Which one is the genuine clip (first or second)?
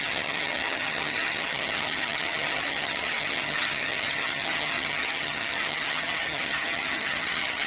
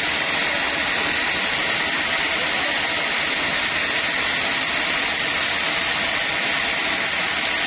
second